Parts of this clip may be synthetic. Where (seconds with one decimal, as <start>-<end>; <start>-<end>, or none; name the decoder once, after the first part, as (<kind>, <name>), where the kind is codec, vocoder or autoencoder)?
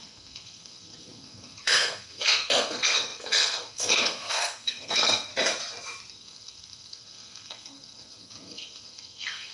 0.0-5.3 (codec, SNAC); 6.1-9.5